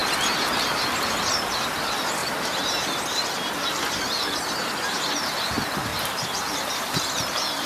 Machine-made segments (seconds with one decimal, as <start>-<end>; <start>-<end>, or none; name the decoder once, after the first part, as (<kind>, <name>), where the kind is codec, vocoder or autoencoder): 2.2-5.5 (vocoder, BigVGAN v2); 5.9-6.7